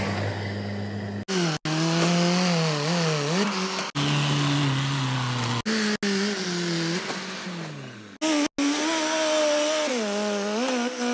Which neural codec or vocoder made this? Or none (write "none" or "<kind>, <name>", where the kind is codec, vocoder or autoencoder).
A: none